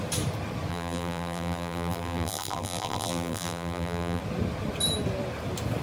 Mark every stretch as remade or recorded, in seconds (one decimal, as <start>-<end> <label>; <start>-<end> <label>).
0.0-0.7 recorded; 0.7-4.2 remade; 4.2-5.8 recorded